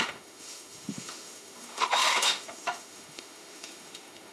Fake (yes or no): yes